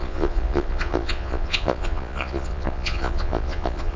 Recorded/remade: remade